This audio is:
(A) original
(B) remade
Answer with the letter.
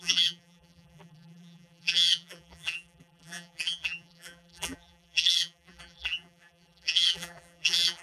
B